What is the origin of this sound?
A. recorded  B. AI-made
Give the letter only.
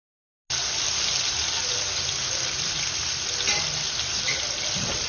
A